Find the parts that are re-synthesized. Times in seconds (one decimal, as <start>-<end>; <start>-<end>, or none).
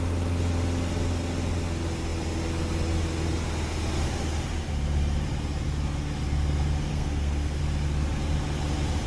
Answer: 6.9-7.6